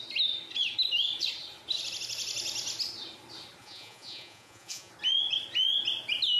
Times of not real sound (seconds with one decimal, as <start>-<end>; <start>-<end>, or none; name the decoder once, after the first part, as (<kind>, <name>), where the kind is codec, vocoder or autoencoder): 3.6-4.9 (vocoder, Vocos)